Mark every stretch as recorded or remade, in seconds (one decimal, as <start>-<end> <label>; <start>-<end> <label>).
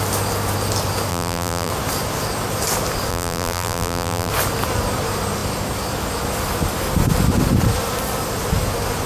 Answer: 0.0-1.1 recorded; 1.1-1.7 remade; 1.7-3.1 recorded; 3.1-4.3 remade; 4.3-9.1 recorded